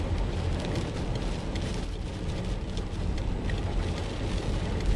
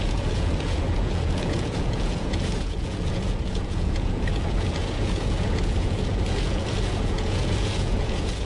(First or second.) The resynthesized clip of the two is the second